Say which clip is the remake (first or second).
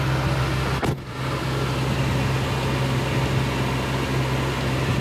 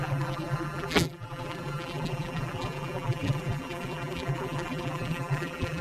second